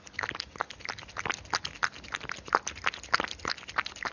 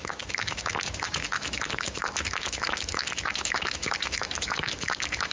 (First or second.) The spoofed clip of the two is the second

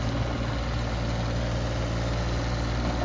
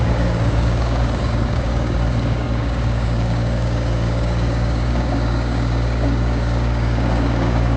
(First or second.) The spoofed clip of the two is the second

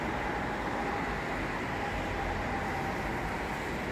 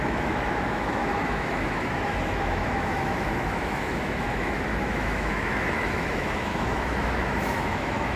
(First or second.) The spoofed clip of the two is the second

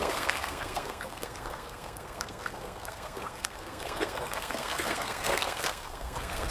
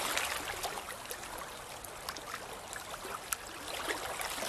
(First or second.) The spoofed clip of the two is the first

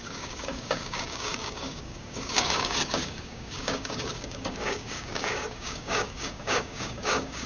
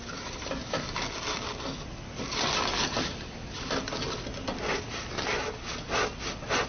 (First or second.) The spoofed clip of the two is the first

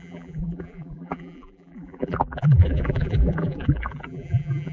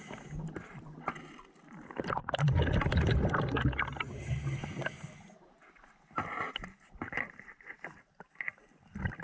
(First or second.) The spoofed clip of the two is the first